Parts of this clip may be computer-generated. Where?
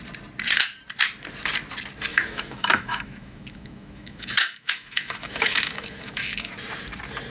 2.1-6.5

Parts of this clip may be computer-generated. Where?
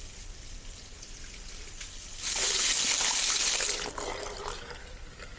none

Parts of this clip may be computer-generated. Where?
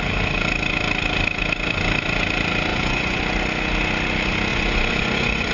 2.7-3.2; 4.5-5.5